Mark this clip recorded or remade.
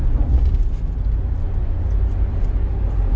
recorded